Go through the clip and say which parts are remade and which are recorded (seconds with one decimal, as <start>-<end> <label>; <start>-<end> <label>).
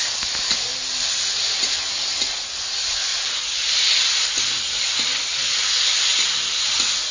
0.0-7.1 recorded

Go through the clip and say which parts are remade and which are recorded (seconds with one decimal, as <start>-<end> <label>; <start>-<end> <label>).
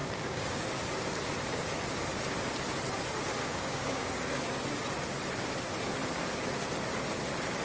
0.0-0.7 remade; 0.7-3.4 recorded; 3.4-4.4 remade; 4.4-7.6 recorded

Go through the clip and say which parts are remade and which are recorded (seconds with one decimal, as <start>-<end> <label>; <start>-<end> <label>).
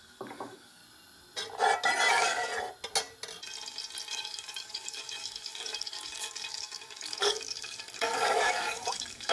0.0-0.8 remade; 0.8-2.1 recorded; 2.1-2.5 remade; 2.5-4.1 recorded; 4.1-9.3 remade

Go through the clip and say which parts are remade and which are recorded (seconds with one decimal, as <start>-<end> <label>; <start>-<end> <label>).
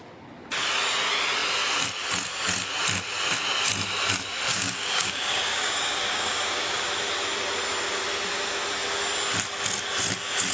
0.0-4.5 recorded; 4.5-6.8 remade; 6.8-10.5 recorded